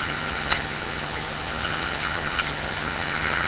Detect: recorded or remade remade